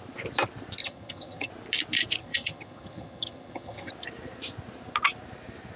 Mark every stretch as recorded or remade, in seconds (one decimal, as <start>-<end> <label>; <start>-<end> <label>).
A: 0.0-0.8 recorded; 0.8-1.5 remade; 1.5-2.2 recorded; 2.2-3.9 remade; 3.9-5.8 recorded